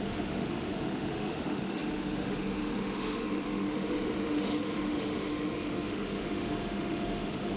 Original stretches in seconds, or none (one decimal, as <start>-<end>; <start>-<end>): none